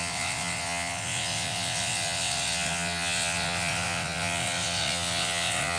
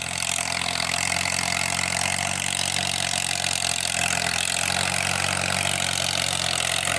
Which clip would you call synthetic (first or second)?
first